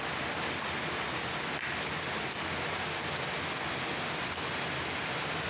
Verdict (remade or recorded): recorded